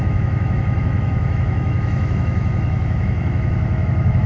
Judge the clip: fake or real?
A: fake